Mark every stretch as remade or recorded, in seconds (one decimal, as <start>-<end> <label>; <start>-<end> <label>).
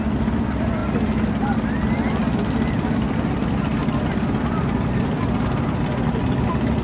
0.0-6.8 recorded